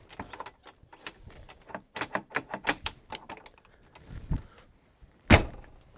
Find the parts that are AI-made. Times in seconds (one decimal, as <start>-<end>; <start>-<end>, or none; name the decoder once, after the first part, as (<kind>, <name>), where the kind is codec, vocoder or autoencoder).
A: 0.9-3.3 (vocoder, BigVGAN v2)